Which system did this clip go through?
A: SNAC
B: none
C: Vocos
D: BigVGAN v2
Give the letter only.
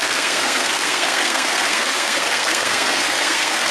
A